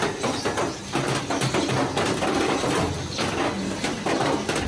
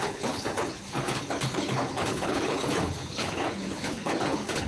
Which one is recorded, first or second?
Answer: first